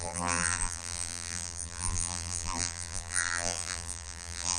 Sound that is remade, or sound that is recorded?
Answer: remade